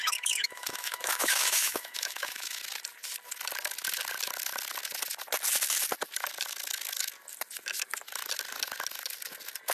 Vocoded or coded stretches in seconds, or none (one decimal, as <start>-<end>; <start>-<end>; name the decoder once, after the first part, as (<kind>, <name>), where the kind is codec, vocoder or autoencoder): 0.0-2.6 (autoencoder, DAC-VAE)